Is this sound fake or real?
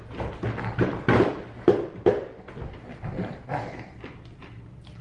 real